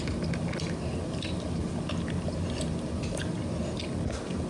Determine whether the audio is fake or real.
real